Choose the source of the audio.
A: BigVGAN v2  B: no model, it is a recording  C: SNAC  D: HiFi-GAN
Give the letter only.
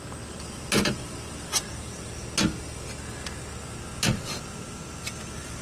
B